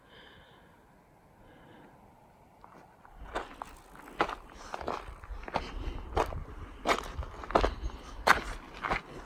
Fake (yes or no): no